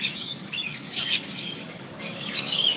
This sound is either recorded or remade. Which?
remade